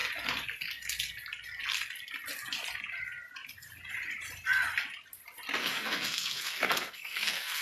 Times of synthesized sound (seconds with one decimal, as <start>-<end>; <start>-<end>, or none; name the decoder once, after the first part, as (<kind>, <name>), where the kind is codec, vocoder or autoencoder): 5.6-7.6 (codec, SNAC)

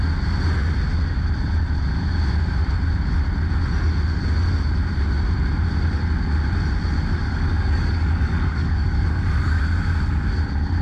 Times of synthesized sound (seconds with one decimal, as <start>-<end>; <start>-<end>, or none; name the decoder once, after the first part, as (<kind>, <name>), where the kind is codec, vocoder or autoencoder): 7.2-9.6 (codec, DAC)

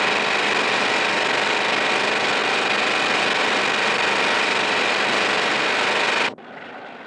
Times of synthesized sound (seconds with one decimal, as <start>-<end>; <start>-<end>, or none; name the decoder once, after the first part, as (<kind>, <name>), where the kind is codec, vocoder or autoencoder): none